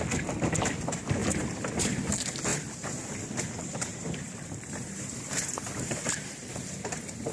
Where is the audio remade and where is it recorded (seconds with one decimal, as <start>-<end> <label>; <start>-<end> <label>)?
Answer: 0.0-1.2 recorded; 1.2-1.9 remade; 1.9-2.5 recorded; 2.5-3.1 remade; 3.1-3.9 recorded; 3.9-7.3 remade